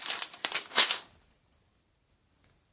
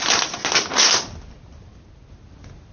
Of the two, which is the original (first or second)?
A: second